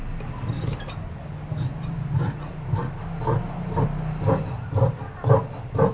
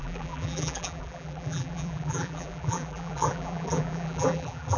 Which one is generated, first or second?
second